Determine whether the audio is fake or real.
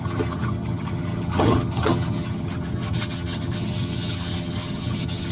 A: fake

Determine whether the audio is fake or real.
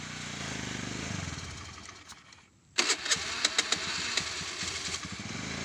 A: real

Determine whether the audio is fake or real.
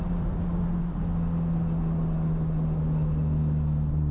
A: real